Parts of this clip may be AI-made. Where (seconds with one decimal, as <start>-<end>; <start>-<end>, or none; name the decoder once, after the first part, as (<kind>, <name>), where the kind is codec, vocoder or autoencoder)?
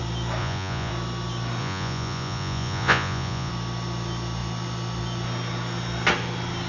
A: 0.4-0.9 (vocoder, Vocos); 1.6-3.5